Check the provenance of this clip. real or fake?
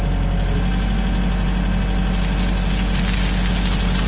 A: real